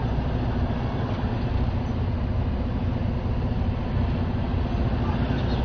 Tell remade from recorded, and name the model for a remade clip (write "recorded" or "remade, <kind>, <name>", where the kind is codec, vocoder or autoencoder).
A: recorded